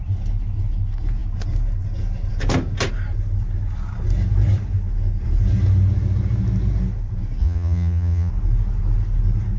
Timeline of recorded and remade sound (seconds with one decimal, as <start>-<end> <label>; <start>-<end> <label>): 0.0-7.4 recorded; 7.4-8.3 remade; 8.3-9.6 recorded